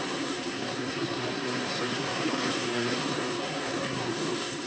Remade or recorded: remade